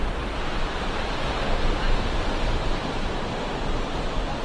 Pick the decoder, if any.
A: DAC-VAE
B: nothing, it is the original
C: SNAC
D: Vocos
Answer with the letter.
B